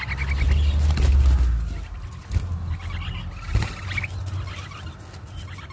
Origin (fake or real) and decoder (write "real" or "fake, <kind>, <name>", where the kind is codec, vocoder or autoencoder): real